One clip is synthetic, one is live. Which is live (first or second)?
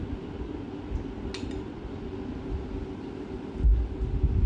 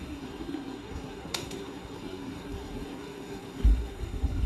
first